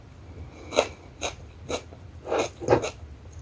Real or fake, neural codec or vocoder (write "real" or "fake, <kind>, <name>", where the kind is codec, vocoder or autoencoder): real